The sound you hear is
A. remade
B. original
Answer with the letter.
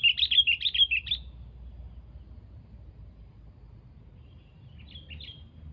B